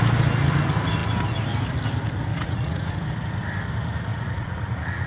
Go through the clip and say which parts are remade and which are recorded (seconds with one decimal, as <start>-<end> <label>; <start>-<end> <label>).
0.0-2.3 recorded; 2.3-2.9 remade; 2.9-4.1 recorded; 4.1-5.1 remade